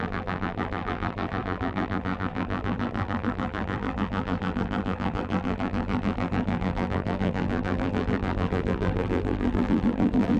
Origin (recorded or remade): remade